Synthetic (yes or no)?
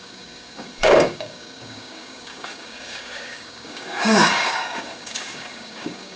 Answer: yes